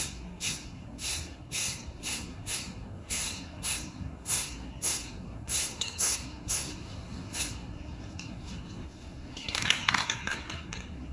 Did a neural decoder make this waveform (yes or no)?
yes